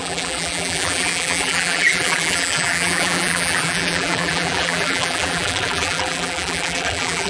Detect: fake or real fake